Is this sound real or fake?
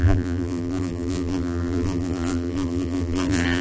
fake